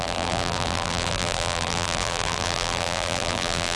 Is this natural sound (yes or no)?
no